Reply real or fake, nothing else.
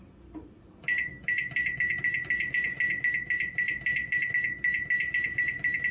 real